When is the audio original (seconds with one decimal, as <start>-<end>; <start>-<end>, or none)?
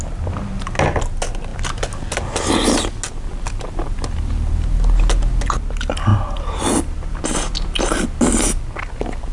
0.0-6.1; 7.2-9.3